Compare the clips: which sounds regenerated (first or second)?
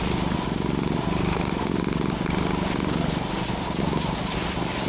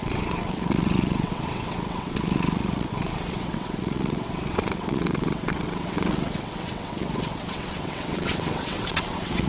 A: second